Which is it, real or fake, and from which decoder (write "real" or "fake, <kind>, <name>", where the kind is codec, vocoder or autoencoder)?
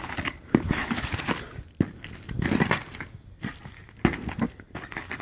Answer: real